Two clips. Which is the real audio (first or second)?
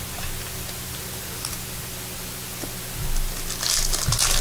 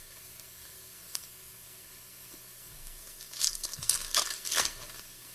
first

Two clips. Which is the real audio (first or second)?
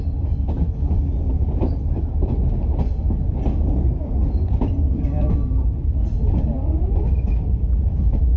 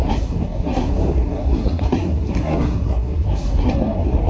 first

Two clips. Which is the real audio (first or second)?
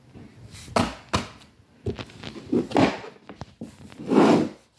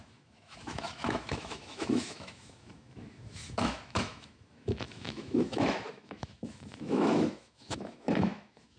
first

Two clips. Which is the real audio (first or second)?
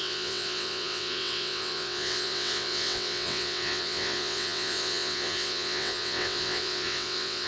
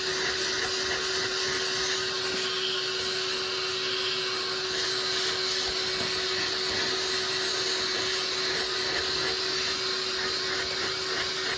second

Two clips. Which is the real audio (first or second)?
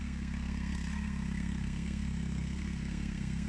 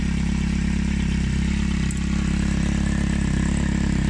second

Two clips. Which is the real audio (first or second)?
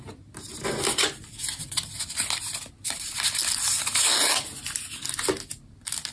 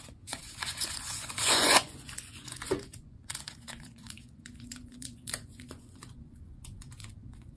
first